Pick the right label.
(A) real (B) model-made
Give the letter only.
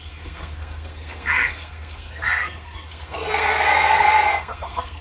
B